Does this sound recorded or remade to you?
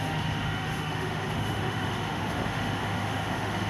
remade